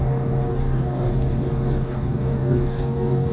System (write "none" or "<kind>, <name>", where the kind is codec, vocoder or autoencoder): codec, DAC